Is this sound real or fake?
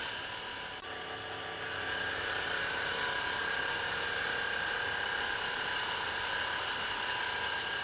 real